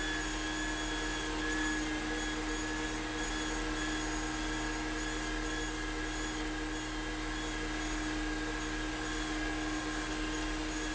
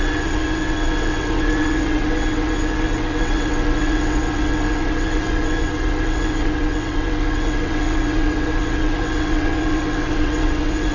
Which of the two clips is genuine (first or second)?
first